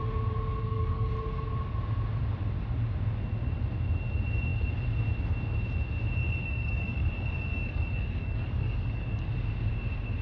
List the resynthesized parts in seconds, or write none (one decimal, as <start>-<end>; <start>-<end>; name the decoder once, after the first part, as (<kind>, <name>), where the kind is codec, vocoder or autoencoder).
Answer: 0.6-1.1 (codec, DAC); 6.4-9.3